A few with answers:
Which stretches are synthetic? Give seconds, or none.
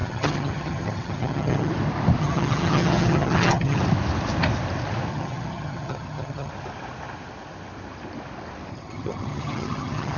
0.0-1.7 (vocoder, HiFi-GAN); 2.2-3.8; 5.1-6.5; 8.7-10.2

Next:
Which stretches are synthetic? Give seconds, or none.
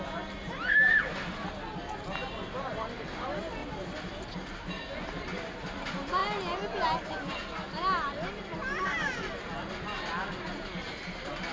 3.6-5.8 (vocoder, BigVGAN v2)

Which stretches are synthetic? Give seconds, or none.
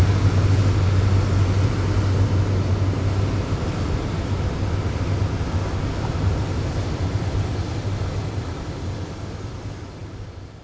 none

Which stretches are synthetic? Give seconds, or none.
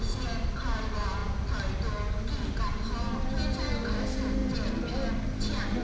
none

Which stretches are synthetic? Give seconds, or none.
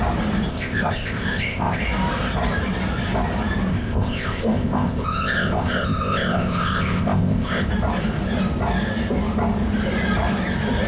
0.5-1.8 (codec, ZipCodec); 3.7-7.7